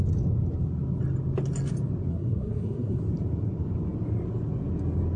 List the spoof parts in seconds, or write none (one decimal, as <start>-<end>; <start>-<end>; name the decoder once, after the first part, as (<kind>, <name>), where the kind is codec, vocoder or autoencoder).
2.1-3.0 (codec, SNAC)